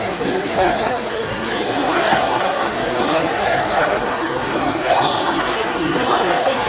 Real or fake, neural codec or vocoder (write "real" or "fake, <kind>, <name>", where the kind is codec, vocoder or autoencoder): fake, codec, SNAC